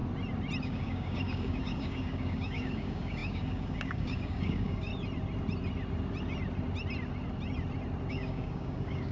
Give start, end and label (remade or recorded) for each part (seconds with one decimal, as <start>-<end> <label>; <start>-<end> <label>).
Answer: 0.0-0.6 recorded; 0.6-4.9 remade; 4.9-8.1 recorded; 8.1-9.1 remade